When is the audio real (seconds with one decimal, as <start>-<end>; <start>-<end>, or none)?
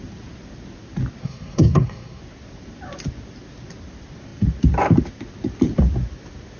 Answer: 0.0-1.2; 2.2-6.6